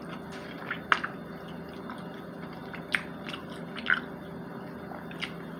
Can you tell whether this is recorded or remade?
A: recorded